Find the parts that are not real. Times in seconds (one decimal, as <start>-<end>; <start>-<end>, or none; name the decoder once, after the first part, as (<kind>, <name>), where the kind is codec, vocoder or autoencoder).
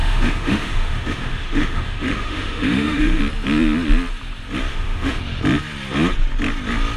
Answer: 0.0-3.2 (autoencoder, DAC-VAE); 4.7-5.2